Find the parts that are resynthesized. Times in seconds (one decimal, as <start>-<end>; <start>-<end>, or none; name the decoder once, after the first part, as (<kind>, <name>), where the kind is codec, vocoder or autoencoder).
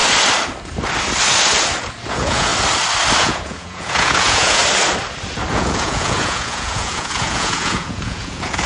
2.1-2.5 (vocoder, Vocos); 3.2-4.6; 5.5-8.7